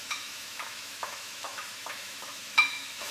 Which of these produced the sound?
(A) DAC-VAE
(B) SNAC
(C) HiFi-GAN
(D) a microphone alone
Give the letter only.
A